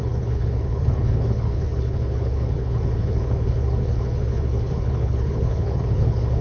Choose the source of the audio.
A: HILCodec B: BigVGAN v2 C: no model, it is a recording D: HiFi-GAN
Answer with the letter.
A